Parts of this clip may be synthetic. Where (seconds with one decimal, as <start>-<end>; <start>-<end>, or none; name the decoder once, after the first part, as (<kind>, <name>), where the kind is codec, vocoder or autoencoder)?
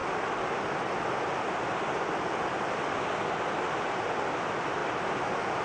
none